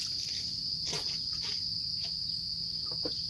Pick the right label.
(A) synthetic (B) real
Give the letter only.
B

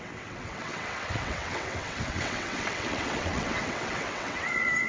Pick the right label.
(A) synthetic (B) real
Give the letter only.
A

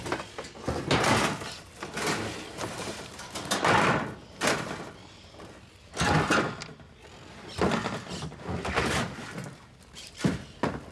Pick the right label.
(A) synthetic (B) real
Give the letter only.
B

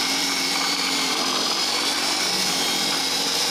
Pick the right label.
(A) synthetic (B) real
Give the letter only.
A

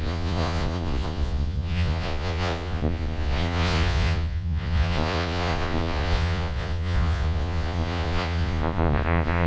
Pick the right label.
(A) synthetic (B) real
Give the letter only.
A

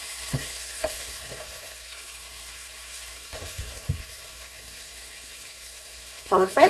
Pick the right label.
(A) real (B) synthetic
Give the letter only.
B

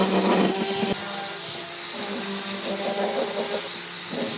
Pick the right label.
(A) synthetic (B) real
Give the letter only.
B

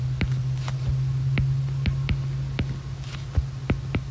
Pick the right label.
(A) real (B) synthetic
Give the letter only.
A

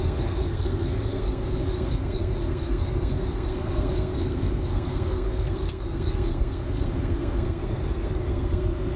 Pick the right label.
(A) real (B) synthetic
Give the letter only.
B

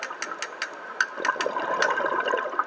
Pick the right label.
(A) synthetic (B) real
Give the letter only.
B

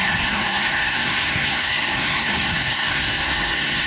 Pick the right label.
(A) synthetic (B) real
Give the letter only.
A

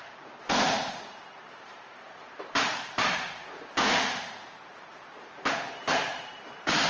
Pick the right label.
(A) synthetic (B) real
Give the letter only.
A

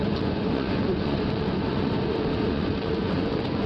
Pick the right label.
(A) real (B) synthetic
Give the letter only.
B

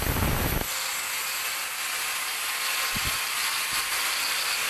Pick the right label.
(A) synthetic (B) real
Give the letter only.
B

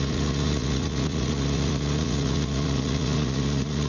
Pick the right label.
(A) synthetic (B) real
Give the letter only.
A